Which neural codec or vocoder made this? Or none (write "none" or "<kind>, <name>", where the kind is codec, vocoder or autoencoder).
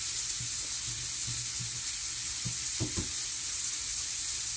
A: none